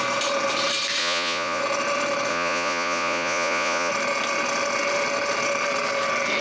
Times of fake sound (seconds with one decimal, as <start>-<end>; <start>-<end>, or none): 1.0-1.6; 2.3-3.9